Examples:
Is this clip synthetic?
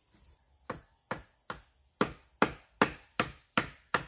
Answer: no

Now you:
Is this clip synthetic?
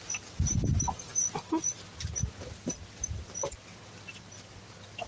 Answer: no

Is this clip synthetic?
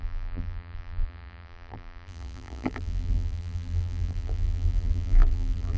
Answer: yes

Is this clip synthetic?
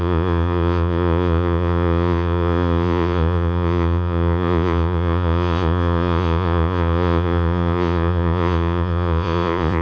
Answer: yes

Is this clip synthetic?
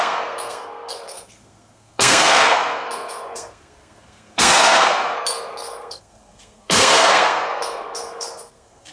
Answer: yes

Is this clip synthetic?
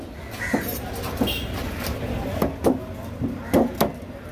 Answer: no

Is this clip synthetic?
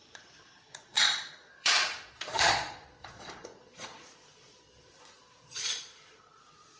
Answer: yes